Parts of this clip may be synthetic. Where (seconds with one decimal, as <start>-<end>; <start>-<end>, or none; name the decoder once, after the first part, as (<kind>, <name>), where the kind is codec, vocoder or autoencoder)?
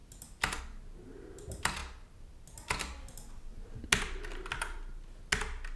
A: none